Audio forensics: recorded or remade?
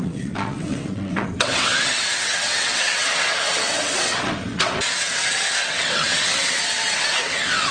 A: remade